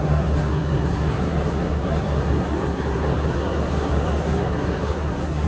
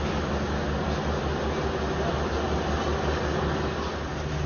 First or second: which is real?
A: second